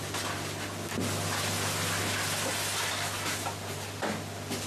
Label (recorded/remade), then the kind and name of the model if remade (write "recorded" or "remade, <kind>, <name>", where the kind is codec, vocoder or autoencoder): recorded